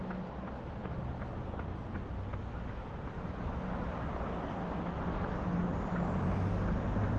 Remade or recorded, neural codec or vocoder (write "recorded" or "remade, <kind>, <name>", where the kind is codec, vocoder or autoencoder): recorded